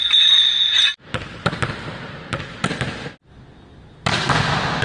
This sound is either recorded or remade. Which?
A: recorded